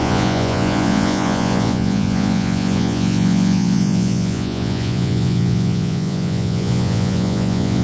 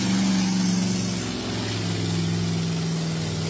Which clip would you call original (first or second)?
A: second